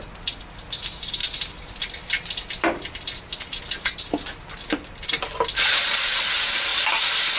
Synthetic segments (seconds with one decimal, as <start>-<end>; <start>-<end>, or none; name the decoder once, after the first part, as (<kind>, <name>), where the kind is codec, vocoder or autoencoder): none